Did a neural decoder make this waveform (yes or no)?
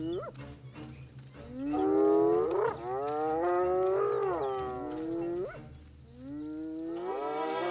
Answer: no